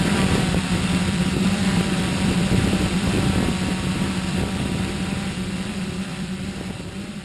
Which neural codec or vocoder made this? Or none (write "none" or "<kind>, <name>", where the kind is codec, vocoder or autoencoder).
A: vocoder, BigVGAN v2